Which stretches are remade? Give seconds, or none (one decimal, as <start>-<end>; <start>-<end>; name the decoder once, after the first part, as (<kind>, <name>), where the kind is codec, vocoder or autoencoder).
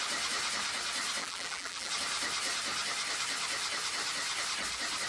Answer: 1.2-1.9 (vocoder, BigVGAN v2)